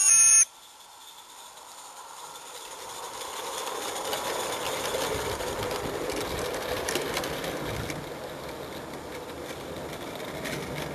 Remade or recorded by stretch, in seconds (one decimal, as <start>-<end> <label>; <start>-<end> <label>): 0.0-10.9 recorded